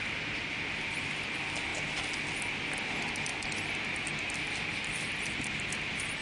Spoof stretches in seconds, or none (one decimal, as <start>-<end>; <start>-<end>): 0.0-1.7; 2.9-3.3; 4.4-6.2